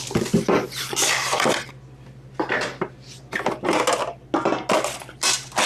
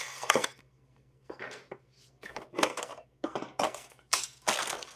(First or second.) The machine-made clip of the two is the second